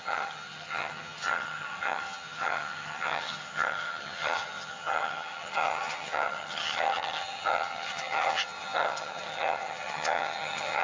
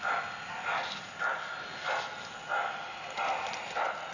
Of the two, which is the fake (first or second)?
first